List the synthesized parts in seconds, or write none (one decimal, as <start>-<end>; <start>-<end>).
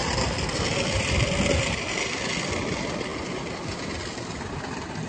0.0-1.3